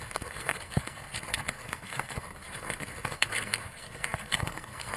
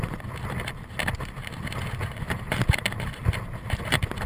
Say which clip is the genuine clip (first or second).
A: second